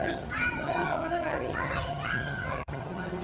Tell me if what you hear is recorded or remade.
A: remade